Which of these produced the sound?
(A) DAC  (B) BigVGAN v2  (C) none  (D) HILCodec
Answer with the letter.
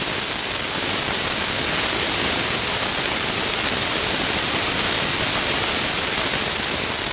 C